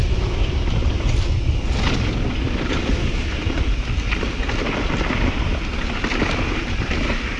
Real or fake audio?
real